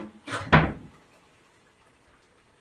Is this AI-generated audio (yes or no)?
no